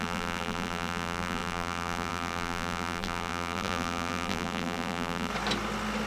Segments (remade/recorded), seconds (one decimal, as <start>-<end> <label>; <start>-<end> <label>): 0.0-5.3 remade; 5.3-6.1 recorded